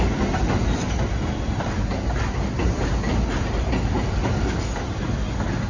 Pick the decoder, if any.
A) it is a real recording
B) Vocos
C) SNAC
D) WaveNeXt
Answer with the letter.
A